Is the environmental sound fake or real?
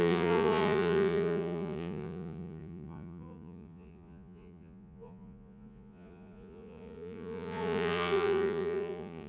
fake